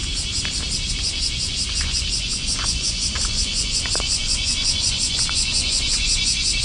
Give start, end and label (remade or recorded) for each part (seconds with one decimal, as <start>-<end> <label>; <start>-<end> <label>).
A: 0.0-0.9 recorded; 0.9-6.6 remade